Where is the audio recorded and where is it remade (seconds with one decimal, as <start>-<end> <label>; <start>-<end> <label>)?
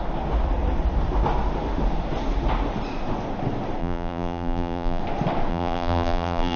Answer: 0.0-3.8 recorded; 3.8-5.0 remade; 5.0-5.5 recorded; 5.5-6.6 remade